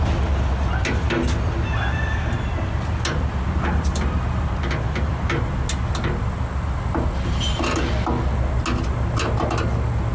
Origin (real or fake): real